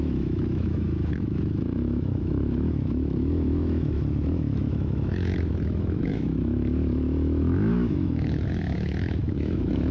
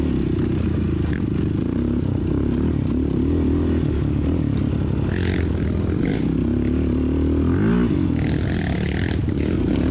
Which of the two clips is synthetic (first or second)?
first